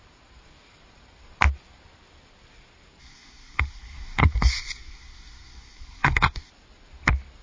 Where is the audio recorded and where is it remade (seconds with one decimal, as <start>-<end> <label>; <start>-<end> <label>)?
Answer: 0.0-3.0 recorded; 3.0-6.5 remade; 6.5-7.4 recorded